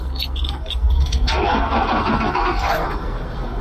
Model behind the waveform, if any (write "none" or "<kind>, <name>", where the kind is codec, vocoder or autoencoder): codec, SNAC